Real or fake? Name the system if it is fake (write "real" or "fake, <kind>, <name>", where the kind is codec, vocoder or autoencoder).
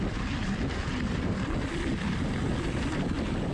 real